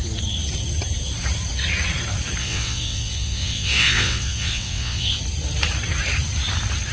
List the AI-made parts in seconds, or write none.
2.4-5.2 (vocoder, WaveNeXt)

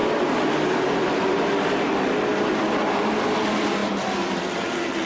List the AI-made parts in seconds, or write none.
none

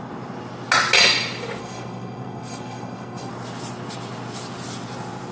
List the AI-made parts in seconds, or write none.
1.6-3.3 (codec, SNAC)

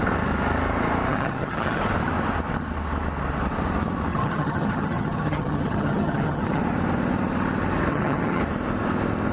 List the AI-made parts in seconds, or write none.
1.1-1.8 (vocoder, HiFi-GAN); 4.1-6.6; 7.9-8.4

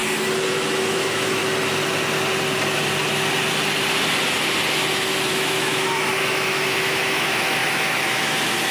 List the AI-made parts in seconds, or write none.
0.5-1.4 (autoencoder, DAC-VAE); 5.3-8.7

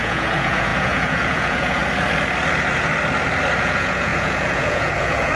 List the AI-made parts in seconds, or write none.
0.0-1.8 (vocoder, Vocos); 3.6-5.4

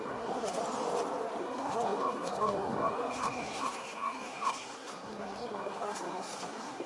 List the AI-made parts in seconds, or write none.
0.0-0.6 (codec, SNAC); 1.4-6.9